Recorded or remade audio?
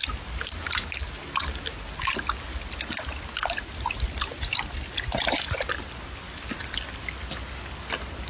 recorded